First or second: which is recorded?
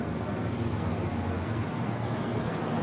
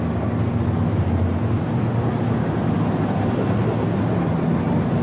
second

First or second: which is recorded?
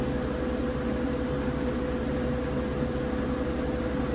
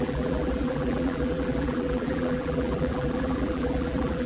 first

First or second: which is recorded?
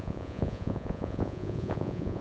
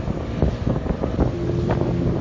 second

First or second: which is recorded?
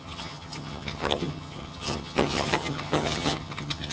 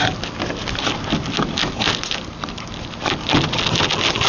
second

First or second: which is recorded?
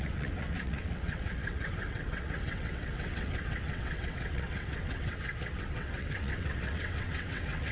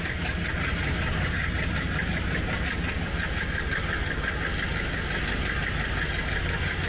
second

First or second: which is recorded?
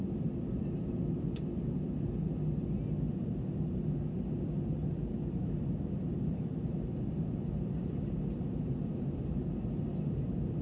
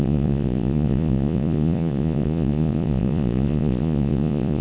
first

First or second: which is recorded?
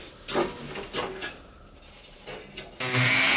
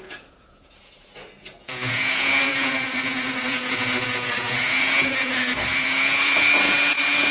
first